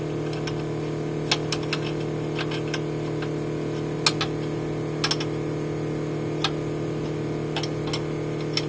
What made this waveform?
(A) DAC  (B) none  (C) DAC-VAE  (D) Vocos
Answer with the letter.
B